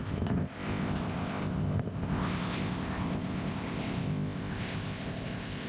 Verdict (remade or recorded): remade